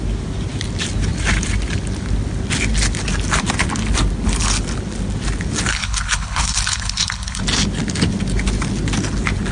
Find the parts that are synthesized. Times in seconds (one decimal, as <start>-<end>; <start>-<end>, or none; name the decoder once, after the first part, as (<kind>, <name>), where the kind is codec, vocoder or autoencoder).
5.7-7.4 (codec, HILCodec)